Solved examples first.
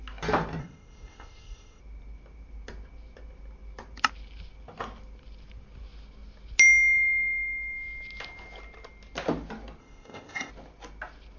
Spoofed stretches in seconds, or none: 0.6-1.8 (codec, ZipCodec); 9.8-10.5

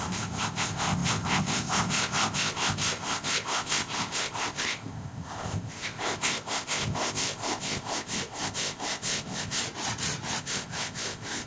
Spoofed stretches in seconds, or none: 0.0-9.6 (codec, ZipCodec); 10.4-11.5

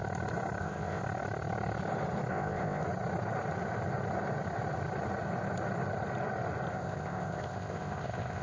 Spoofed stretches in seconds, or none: 0.6-1.0 (codec, ZipCodec); 2.3-2.8; 6.7-8.4

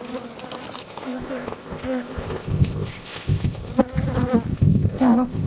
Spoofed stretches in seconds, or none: 0.8-3.7 (codec, ZipCodec); 4.5-5.5

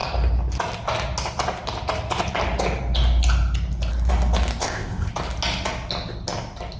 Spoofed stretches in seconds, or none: 4.6-5.1 (codec, ZipCodec)

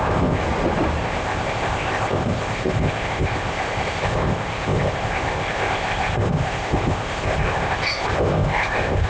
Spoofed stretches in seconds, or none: 0.0-0.4 (codec, ZipCodec); 1.0-9.1

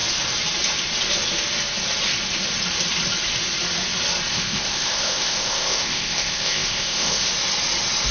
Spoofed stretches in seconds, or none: 4.3-7.3 (codec, ZipCodec)

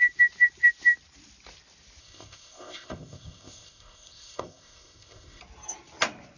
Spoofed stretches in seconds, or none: 2.0-5.4 (codec, ZipCodec)